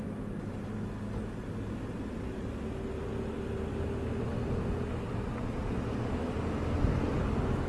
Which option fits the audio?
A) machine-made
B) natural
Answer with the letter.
B